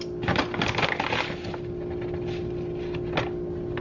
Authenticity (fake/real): real